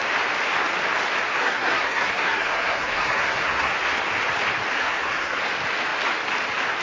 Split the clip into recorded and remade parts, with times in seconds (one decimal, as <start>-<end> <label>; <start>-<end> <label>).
0.0-1.3 recorded; 1.3-3.8 remade; 3.8-4.8 recorded; 4.8-5.4 remade; 5.4-6.8 recorded